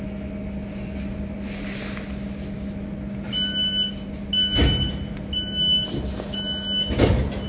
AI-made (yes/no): no